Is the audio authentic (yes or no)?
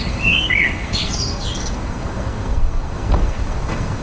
no